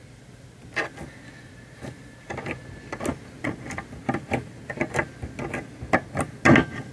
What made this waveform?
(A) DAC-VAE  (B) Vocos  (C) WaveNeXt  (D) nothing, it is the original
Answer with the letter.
D